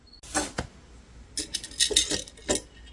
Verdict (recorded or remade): recorded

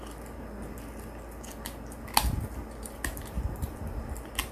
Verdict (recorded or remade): recorded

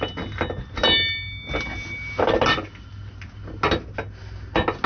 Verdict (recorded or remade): recorded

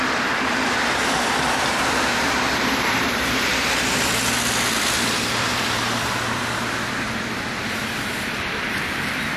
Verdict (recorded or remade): remade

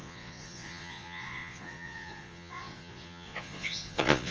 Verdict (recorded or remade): remade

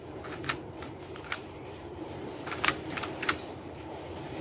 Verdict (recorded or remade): remade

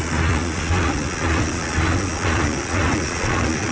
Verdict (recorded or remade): remade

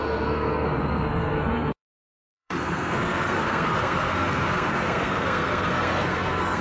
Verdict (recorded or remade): remade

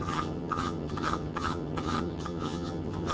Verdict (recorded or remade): remade